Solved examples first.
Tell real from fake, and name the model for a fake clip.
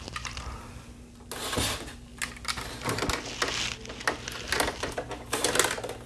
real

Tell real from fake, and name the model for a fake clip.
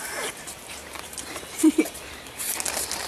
real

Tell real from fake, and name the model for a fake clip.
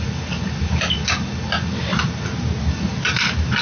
real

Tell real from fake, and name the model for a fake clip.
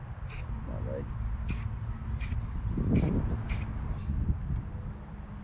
real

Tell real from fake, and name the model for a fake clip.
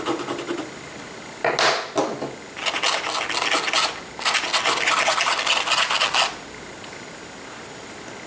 real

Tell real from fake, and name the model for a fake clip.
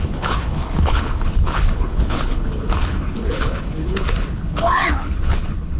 fake, codec, HILCodec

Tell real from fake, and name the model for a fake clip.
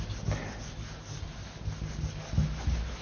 real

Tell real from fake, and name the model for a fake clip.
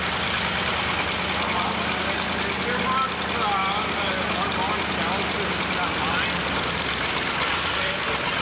real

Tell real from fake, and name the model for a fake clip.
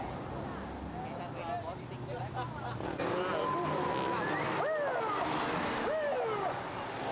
real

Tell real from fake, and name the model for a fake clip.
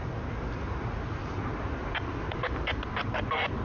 real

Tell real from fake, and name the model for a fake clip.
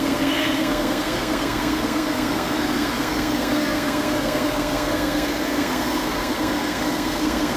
fake, codec, SNAC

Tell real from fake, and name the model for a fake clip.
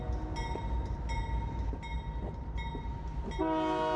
real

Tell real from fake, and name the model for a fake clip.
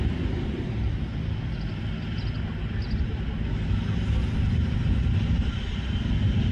real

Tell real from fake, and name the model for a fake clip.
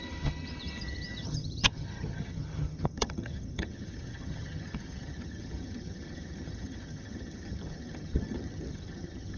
fake, vocoder, HiFi-GAN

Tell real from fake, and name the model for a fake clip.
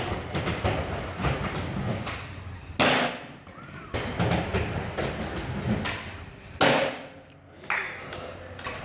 real